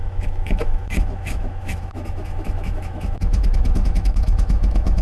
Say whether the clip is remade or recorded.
remade